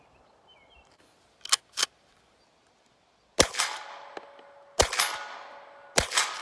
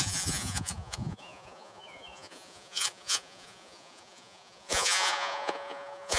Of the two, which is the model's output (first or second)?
second